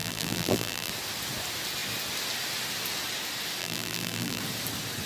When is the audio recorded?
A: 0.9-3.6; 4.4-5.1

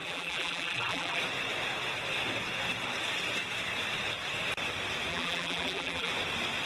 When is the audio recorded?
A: 1.2-5.1; 6.1-6.7

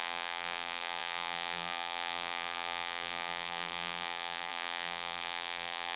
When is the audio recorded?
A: none